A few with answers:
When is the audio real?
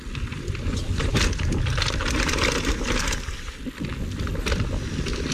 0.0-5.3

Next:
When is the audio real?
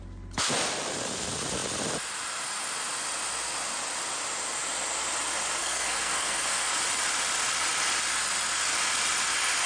0.0-5.6; 6.7-9.7